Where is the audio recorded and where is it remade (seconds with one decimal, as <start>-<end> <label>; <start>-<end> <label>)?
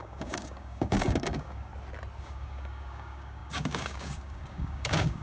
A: 0.0-1.7 remade; 1.7-2.2 recorded; 2.2-5.2 remade